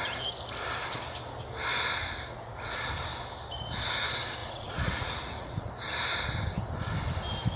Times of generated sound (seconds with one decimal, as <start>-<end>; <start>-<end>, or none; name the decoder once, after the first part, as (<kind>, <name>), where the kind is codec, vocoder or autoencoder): 2.3-2.8 (vocoder, Vocos); 4.4-5.7